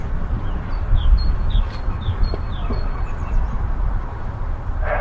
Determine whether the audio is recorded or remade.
remade